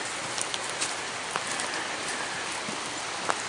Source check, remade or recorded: recorded